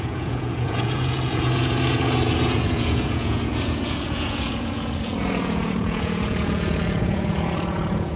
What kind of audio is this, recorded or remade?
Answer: remade